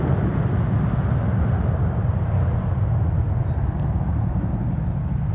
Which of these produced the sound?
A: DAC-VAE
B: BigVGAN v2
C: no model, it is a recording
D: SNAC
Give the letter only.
C